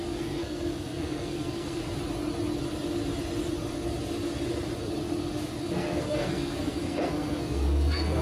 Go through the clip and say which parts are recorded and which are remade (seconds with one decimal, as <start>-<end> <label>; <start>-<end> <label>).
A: 0.0-1.8 remade; 1.8-5.6 recorded; 5.6-8.2 remade

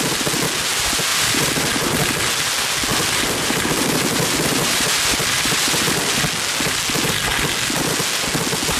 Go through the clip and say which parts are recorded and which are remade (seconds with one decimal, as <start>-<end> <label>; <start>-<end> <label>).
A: 0.0-1.1 recorded; 1.1-2.3 remade; 2.3-2.9 recorded; 2.9-6.3 remade; 6.3-8.8 recorded

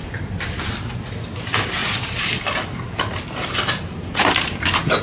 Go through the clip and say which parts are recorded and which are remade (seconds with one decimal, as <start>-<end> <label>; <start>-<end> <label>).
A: 0.0-5.0 remade

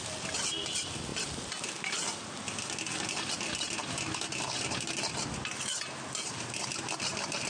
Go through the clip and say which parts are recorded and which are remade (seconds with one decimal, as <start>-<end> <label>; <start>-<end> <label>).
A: 0.0-7.5 recorded

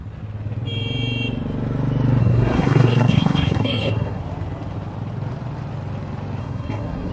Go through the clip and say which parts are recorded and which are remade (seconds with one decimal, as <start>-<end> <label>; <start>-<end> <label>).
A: 0.0-2.2 recorded; 2.2-4.2 remade; 4.2-6.4 recorded; 6.4-7.1 remade

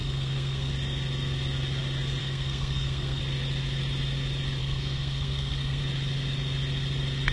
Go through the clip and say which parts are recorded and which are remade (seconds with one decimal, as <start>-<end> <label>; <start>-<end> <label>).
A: 0.0-0.7 remade; 0.7-2.2 recorded; 2.2-3.2 remade; 3.2-4.6 recorded; 4.6-5.8 remade; 5.8-7.3 recorded